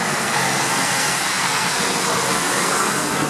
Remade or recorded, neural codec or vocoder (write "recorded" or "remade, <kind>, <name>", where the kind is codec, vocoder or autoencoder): remade, codec, SNAC